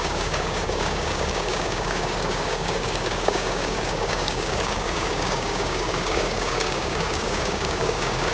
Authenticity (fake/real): fake